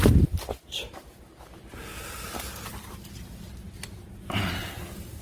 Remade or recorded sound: recorded